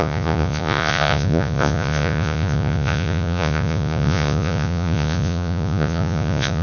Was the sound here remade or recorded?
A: remade